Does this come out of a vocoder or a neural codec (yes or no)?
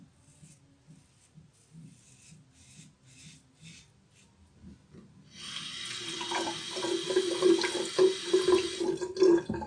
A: no